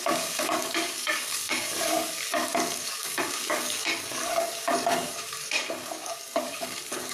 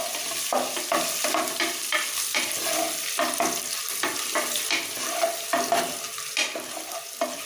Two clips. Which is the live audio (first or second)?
second